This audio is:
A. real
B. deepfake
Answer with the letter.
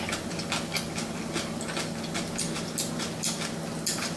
A